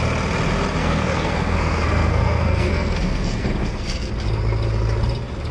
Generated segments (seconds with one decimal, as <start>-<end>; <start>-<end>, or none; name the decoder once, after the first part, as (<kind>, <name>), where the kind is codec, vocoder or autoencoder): 0.8-4.1 (codec, SNAC)